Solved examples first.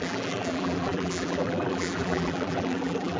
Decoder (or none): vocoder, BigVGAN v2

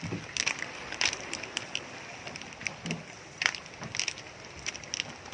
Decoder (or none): vocoder, BigVGAN v2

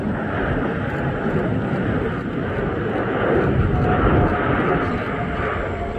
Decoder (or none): none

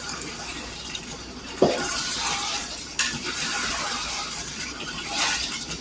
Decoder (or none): vocoder, BigVGAN v2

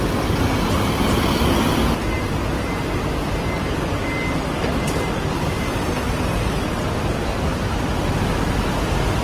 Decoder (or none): none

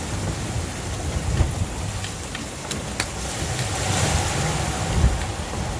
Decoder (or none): none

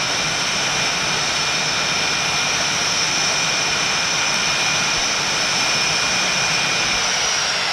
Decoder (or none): none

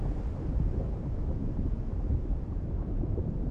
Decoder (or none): none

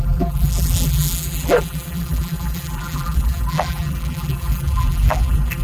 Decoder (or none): vocoder, BigVGAN v2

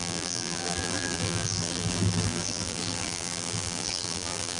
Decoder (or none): vocoder, BigVGAN v2